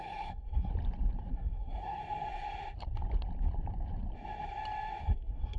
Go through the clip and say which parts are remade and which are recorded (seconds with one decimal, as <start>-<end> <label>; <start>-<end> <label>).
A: 0.0-0.7 remade; 0.7-1.3 recorded; 1.3-2.0 remade; 2.0-5.0 recorded; 5.0-5.6 remade